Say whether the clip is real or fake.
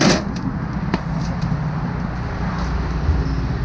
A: real